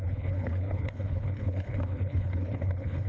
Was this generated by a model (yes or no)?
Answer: yes